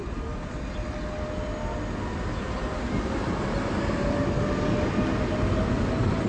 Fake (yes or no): no